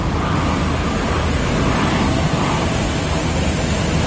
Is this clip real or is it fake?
real